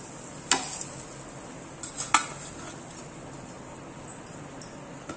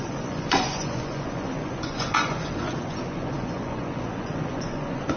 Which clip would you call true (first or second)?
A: first